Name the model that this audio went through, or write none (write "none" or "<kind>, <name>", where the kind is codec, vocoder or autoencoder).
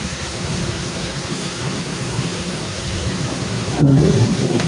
codec, SNAC